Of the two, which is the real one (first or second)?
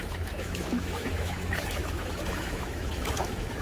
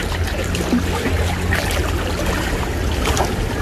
second